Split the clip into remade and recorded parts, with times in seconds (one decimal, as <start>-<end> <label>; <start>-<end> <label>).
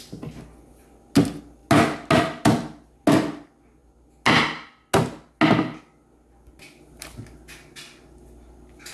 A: 0.0-8.9 recorded